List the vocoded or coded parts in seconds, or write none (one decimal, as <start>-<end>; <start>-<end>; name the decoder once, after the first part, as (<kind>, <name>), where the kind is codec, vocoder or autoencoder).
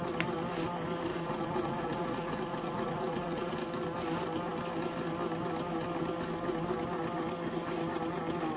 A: 1.1-3.5 (vocoder, Vocos)